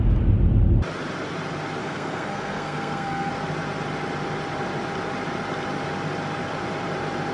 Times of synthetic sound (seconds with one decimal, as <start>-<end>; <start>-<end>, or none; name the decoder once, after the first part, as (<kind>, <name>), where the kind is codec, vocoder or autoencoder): 1.8-3.3 (codec, SNAC)